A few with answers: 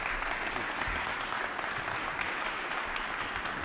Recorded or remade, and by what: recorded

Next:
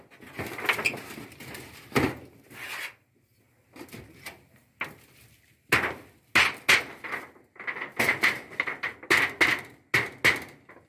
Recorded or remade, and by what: recorded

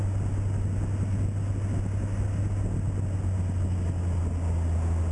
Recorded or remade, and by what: recorded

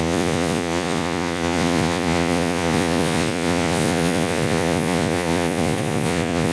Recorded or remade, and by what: remade, vocoder, Vocos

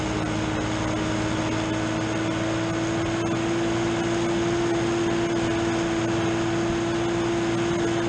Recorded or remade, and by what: recorded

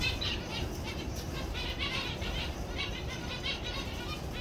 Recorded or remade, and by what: remade, vocoder, BigVGAN v2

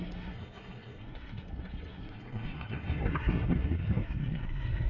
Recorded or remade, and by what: remade, codec, SNAC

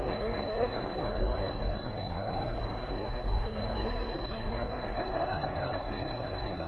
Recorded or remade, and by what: remade, codec, SNAC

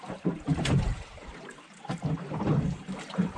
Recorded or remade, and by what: remade, vocoder, BigVGAN v2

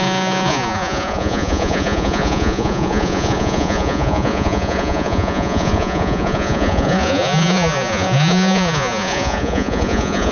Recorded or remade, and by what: remade, vocoder, Vocos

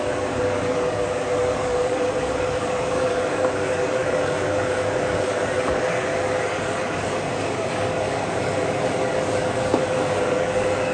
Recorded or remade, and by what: remade, codec, DAC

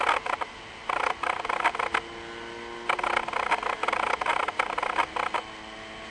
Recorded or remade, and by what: recorded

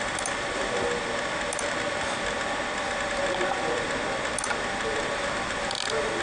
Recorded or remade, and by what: recorded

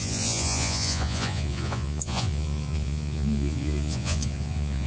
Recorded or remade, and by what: remade, vocoder, Vocos